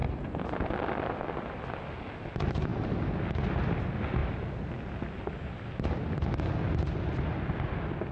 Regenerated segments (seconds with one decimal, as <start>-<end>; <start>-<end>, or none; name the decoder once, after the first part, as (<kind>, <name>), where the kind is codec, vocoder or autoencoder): none